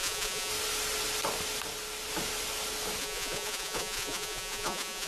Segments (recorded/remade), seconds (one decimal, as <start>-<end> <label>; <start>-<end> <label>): 0.0-0.5 remade; 0.5-3.0 recorded; 3.0-5.1 remade

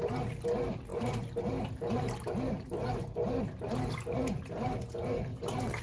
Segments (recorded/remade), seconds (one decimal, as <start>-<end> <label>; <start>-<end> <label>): 0.0-5.8 recorded

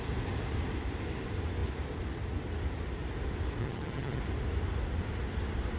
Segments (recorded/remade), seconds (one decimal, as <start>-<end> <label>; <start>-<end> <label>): 0.0-3.6 recorded; 3.6-4.2 remade; 4.2-5.8 recorded

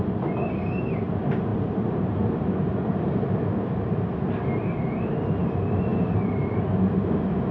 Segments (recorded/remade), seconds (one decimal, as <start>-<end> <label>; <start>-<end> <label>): 0.0-1.5 recorded; 1.5-3.3 remade; 3.3-5.9 recorded; 5.9-7.5 remade

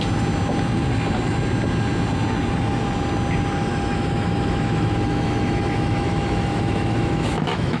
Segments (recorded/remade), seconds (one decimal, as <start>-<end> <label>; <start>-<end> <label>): 0.0-3.7 recorded; 3.7-7.8 remade

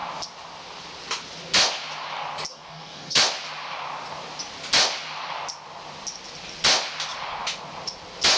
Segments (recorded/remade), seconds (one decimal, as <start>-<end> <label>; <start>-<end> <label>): 0.0-2.5 recorded; 2.5-3.2 remade; 3.2-8.4 recorded